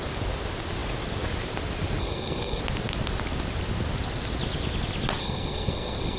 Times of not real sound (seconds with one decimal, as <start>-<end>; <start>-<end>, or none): 2.0-2.6; 5.2-6.2